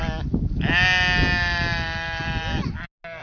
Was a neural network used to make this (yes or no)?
no